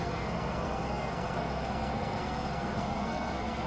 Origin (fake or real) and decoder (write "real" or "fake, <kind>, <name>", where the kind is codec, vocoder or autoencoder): fake, codec, SNAC